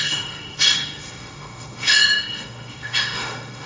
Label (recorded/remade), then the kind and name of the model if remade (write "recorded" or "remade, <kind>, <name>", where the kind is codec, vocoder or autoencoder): remade, autoencoder, DAC-VAE